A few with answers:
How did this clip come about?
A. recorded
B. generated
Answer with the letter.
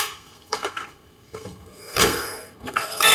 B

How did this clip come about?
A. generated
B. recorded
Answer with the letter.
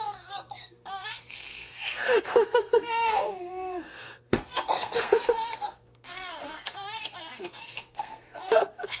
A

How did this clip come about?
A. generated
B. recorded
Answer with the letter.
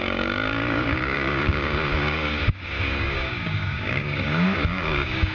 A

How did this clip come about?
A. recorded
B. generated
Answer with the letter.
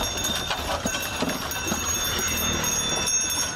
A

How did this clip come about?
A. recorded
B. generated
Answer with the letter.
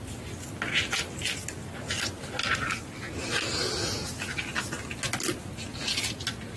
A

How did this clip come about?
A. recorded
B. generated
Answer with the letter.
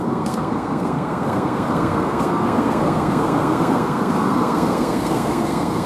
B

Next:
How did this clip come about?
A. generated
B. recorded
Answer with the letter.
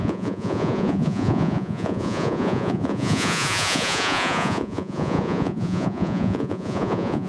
A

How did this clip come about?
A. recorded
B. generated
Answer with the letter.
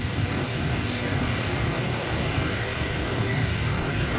B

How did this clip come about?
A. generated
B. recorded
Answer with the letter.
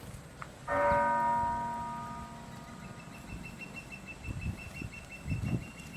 B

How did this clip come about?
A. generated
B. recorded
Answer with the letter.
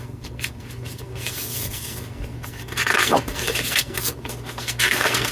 A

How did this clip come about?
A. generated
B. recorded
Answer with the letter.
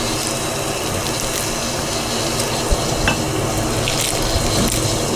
B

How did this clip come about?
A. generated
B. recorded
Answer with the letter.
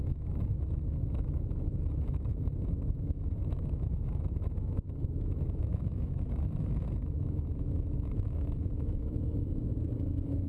A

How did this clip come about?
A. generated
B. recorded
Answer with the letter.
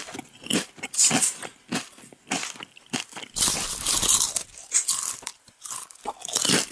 A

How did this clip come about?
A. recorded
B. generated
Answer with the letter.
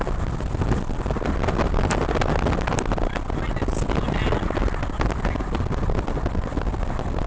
A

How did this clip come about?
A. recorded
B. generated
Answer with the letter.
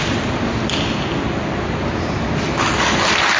A